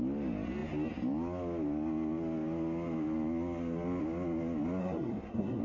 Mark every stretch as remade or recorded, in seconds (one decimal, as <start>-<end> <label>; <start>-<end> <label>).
0.0-4.8 recorded; 4.8-5.6 remade